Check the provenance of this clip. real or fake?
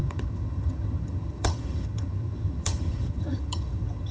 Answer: fake